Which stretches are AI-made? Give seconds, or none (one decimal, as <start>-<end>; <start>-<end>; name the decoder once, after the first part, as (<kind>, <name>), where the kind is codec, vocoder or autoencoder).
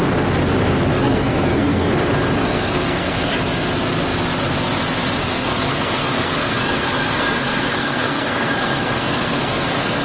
0.9-1.9 (codec, SNAC); 2.4-3.3; 5.2-10.0